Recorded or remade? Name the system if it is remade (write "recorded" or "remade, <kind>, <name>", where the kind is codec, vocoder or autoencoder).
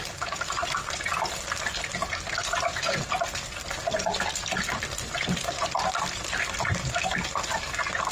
recorded